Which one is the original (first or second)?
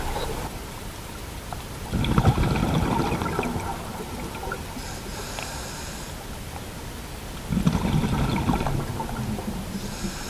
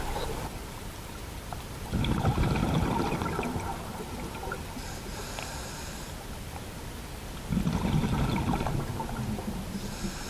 first